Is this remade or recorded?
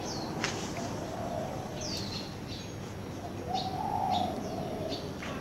recorded